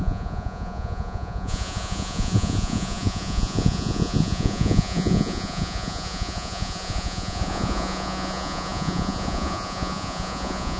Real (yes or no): no